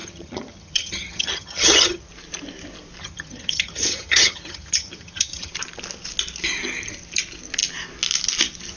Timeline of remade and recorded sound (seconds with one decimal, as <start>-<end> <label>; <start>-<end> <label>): 0.0-2.1 remade; 2.1-3.0 recorded; 3.0-5.5 remade; 5.5-8.8 recorded